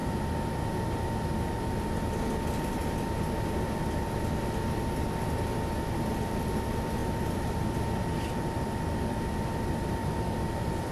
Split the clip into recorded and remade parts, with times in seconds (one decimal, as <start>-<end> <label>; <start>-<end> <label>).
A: 0.0-7.0 recorded; 7.0-7.6 remade; 7.6-10.0 recorded; 10.0-10.9 remade